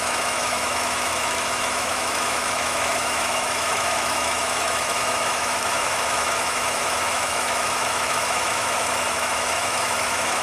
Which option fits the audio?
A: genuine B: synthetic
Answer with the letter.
B